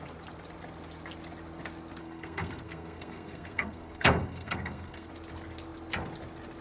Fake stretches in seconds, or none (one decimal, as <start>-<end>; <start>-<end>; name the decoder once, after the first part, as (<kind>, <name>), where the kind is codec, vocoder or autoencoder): 2.0-5.1 (codec, SNAC)